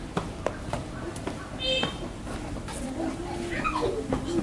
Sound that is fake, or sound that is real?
real